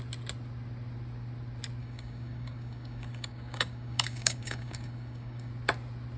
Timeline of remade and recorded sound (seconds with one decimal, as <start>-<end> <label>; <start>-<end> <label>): 0.0-1.8 recorded; 1.8-5.5 remade; 5.5-6.2 recorded